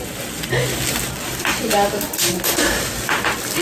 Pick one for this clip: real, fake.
real